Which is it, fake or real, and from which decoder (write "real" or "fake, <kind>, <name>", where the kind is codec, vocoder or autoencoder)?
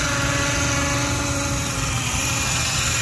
real